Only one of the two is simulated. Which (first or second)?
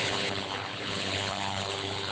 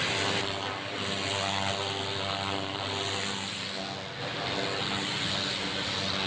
first